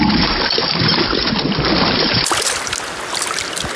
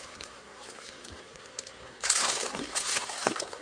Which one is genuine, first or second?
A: first